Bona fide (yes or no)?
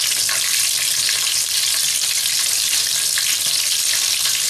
yes